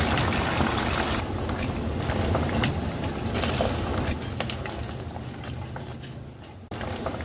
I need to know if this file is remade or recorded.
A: recorded